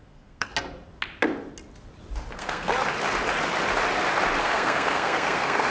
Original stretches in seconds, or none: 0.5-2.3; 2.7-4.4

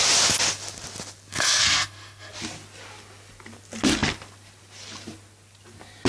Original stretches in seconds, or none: 0.0-1.3; 2.3-6.1

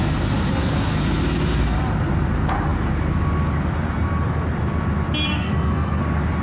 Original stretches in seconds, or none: 0.0-5.3; 6.0-6.4

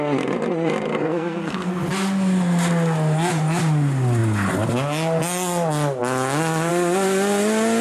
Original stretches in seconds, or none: 0.0-0.9; 1.8-7.8

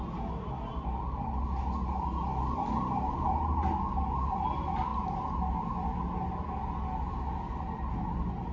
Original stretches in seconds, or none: 0.0-8.5

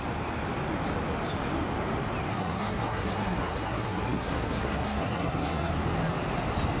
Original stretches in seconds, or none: 0.0-2.3; 5.7-6.8